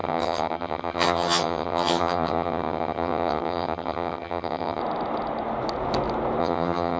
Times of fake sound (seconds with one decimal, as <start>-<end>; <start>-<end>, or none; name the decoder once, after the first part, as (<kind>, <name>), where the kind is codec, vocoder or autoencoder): 0.0-4.8 (vocoder, HiFi-GAN); 6.4-7.0